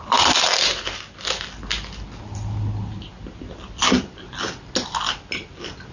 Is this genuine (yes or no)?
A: yes